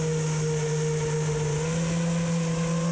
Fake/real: real